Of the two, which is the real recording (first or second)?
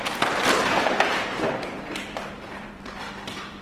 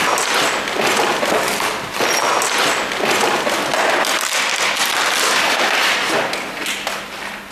second